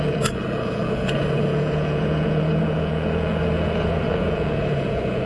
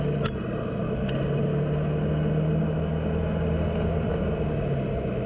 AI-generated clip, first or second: first